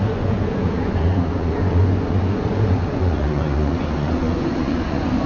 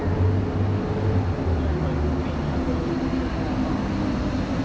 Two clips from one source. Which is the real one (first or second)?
second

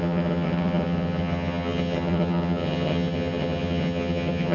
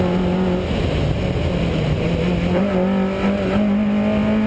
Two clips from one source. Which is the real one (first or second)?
second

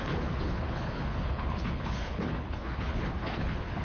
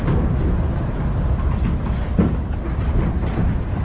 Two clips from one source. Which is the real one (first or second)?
second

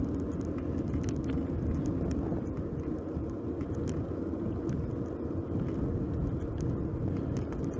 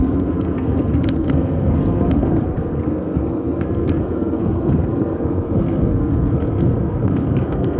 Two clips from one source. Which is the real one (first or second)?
first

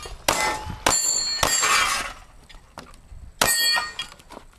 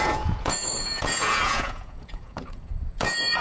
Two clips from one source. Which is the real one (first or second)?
first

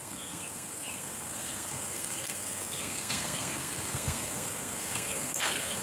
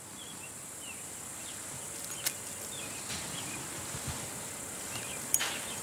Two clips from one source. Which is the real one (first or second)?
second